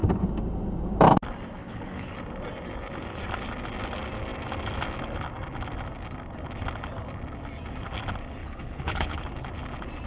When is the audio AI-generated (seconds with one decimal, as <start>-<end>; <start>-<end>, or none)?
1.6-2.1; 8.4-9.2